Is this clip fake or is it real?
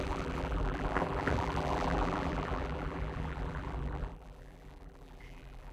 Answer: fake